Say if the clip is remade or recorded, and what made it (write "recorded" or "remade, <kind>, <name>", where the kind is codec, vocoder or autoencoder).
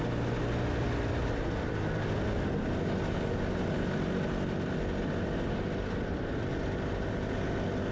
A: recorded